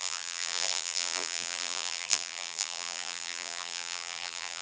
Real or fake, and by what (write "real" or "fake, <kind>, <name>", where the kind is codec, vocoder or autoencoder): fake, vocoder, BigVGAN v2